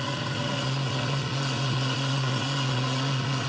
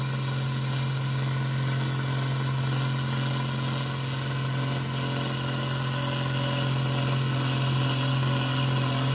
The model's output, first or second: first